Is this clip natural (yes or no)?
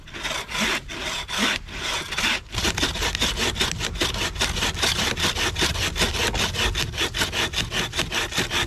yes